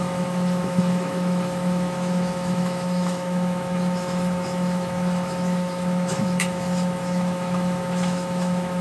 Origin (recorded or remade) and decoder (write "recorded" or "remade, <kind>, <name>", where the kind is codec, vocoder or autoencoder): remade, autoencoder, DAC-VAE